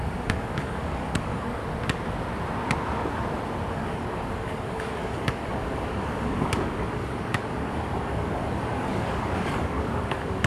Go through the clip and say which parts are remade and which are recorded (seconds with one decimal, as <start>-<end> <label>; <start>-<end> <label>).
0.0-1.6 remade; 1.6-3.7 recorded; 3.7-10.5 remade

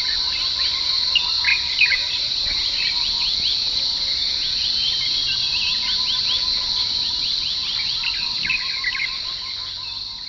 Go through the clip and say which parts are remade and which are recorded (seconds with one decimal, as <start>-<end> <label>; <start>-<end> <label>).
0.0-10.3 recorded

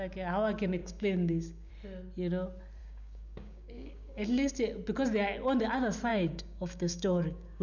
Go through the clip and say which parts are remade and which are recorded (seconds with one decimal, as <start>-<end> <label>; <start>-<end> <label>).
0.0-0.8 recorded; 0.8-1.7 remade; 1.7-2.8 recorded; 2.8-4.5 remade; 4.5-6.1 recorded; 6.1-7.6 remade